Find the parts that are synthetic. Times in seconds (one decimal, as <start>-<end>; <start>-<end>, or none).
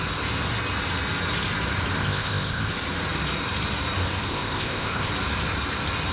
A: 2.0-2.7; 4.3-5.1